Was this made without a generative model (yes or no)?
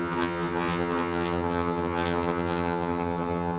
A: no